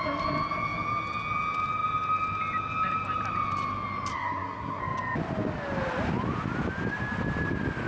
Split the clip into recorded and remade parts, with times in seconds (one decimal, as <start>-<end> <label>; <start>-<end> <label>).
0.0-4.1 recorded; 4.1-4.8 remade; 4.8-7.9 recorded